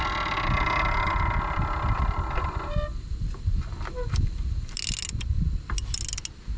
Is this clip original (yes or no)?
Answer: yes